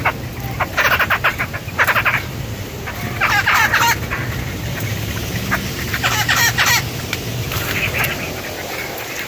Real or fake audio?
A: fake